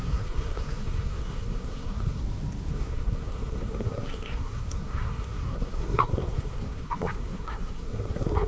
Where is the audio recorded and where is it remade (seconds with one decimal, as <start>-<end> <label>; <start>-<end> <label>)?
0.0-2.2 remade; 2.2-2.7 recorded; 2.7-8.5 remade